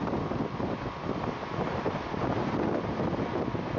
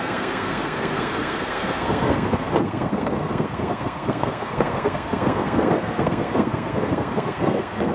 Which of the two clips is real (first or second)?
first